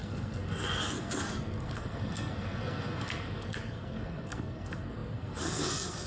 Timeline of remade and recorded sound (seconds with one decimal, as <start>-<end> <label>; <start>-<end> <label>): 0.0-6.1 remade